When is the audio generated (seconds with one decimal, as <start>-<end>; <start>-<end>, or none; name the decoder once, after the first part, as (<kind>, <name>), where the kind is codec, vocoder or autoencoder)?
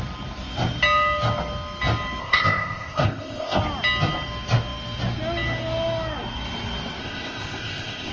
2.2-3.6 (codec, ZipCodec); 7.0-8.1